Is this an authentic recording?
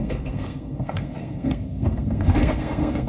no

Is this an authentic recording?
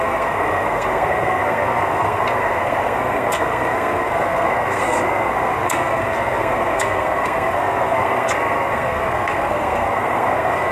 no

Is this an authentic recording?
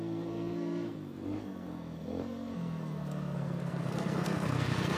no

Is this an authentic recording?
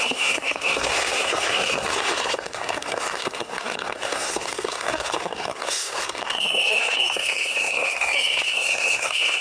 no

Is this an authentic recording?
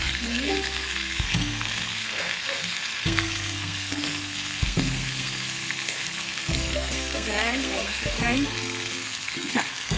no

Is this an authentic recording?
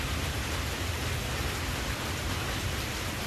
yes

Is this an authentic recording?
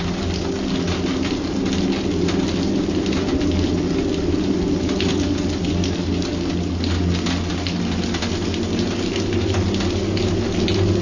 yes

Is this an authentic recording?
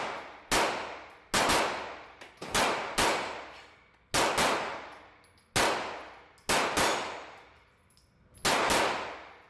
yes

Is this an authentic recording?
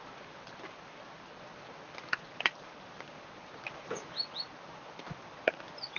yes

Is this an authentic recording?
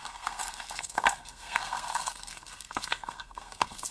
no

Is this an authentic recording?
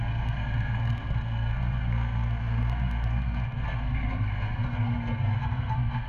no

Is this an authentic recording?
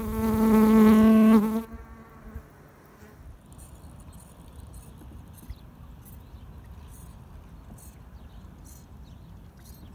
yes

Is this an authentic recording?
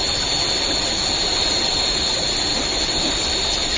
yes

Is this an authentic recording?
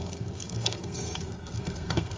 no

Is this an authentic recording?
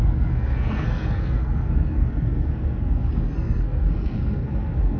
no